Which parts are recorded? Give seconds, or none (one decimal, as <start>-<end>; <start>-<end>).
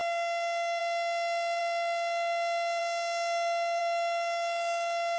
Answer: 0.8-3.8